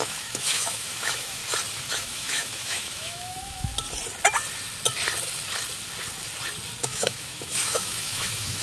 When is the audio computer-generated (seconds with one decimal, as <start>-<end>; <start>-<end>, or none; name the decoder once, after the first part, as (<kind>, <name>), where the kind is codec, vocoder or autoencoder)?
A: 0.0-1.4 (autoencoder, DAC-VAE); 1.9-3.7; 6.8-8.6